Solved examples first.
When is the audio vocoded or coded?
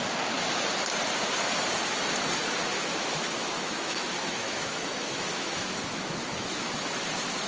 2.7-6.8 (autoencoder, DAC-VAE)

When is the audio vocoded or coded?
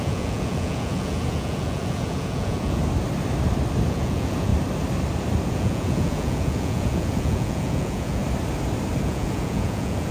0.0-2.8 (vocoder, Vocos); 3.9-4.5; 5.5-8.2; 9.0-10.1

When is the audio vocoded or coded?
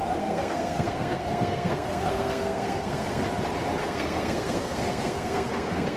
0.0-3.2 (codec, SNAC); 3.8-6.0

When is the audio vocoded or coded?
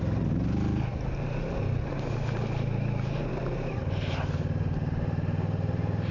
3.3-6.1 (vocoder, BigVGAN v2)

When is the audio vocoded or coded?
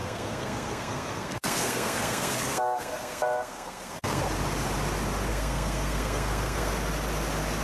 0.0-4.2 (codec, SNAC); 5.3-6.7